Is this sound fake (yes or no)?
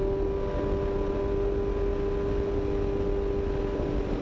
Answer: no